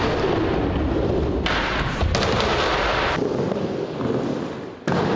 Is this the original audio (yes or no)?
yes